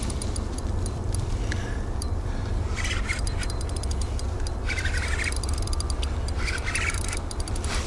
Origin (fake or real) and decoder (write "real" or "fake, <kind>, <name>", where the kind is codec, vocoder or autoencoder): fake, vocoder, BigVGAN v2